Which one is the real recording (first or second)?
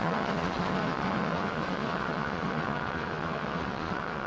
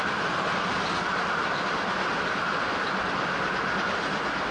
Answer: second